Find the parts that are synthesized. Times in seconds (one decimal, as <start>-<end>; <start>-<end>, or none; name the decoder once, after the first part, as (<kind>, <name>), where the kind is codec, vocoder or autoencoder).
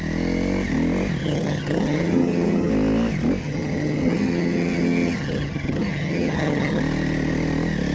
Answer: 1.2-2.7 (vocoder, HiFi-GAN); 3.4-6.8